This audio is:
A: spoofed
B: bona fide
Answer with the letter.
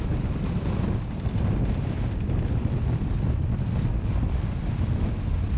B